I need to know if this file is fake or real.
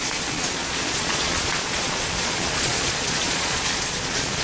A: fake